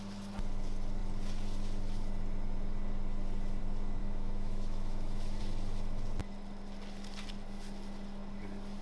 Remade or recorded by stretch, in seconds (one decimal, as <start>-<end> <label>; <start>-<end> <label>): 0.0-4.0 recorded; 4.0-5.4 remade; 5.4-8.8 recorded